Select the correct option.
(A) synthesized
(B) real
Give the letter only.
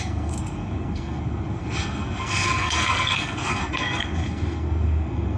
A